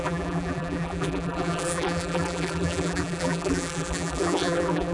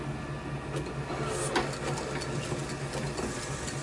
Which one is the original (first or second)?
second